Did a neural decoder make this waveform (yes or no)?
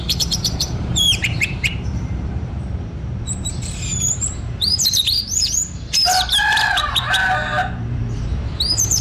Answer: yes